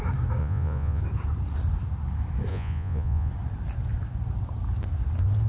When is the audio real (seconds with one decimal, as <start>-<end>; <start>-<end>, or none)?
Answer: 0.0-0.4; 1.0-2.5; 3.3-5.5